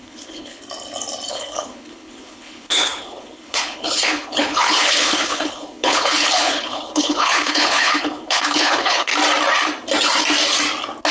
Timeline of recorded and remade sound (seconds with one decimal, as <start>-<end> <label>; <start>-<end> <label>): 0.0-0.6 remade; 0.6-1.3 recorded; 1.3-9.1 remade; 9.1-11.1 recorded